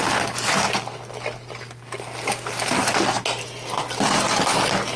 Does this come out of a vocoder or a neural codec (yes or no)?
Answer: no